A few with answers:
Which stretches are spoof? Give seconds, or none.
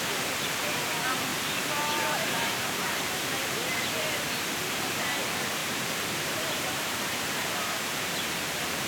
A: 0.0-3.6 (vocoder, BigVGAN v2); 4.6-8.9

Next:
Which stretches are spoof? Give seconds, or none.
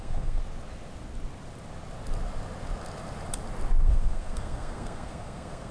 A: 0.0-0.4 (codec, SNAC); 3.8-5.7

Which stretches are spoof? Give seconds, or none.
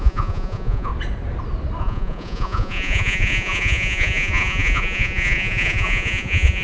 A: 0.0-0.9 (vocoder, Vocos); 1.8-6.6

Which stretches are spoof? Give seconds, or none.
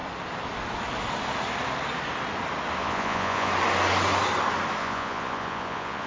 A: 2.8-3.5 (vocoder, Vocos); 4.8-6.1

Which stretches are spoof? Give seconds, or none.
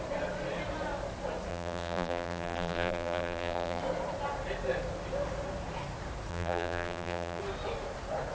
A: 1.5-3.8 (vocoder, BigVGAN v2); 6.3-7.4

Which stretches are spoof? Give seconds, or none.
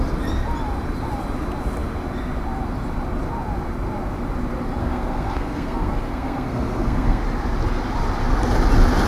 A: 4.8-7.2 (codec, SNAC)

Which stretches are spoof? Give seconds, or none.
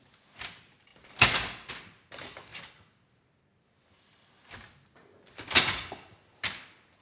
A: none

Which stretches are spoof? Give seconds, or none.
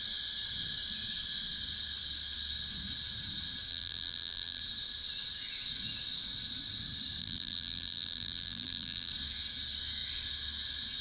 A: 3.7-4.6 (vocoder, BigVGAN v2); 7.2-9.1